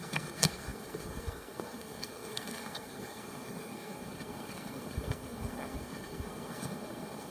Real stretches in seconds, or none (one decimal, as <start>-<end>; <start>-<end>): none